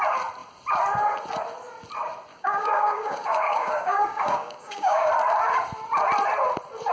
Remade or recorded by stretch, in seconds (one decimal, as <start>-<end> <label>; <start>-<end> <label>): 0.0-2.3 recorded; 2.3-5.1 remade; 5.1-6.9 recorded